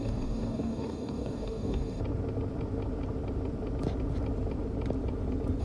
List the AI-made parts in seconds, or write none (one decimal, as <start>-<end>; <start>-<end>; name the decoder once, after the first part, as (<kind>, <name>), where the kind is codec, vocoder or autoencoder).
0.0-2.0 (codec, DAC)